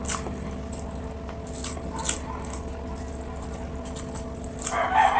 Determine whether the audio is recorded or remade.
recorded